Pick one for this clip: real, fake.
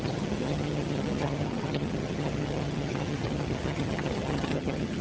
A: fake